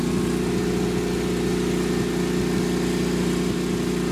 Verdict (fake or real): real